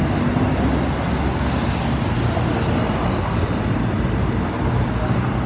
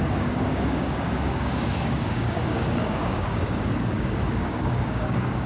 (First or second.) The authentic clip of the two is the first